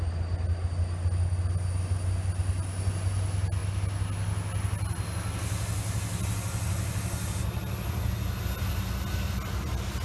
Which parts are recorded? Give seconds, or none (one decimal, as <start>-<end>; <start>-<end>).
0.0-10.0